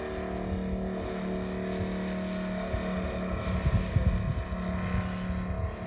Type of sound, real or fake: real